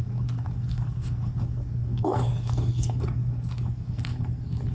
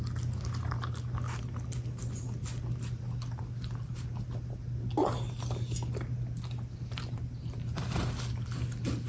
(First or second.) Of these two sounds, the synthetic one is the first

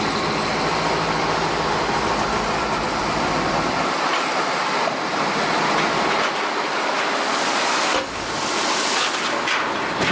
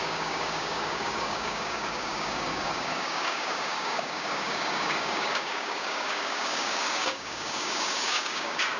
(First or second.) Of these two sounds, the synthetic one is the second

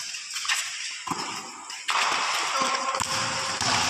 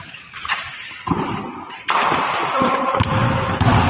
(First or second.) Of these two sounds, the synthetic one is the second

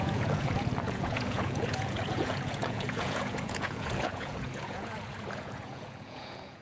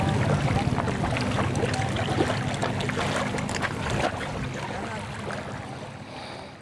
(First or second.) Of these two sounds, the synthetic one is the first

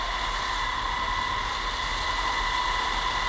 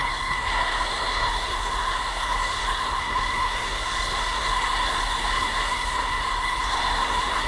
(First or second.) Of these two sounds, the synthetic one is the second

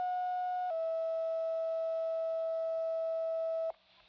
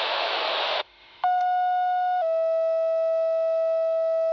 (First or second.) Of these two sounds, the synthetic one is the second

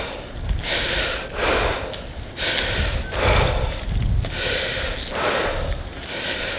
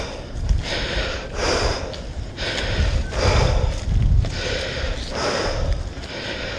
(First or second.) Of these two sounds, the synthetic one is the second